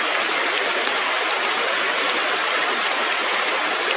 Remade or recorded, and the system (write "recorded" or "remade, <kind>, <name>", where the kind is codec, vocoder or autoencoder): recorded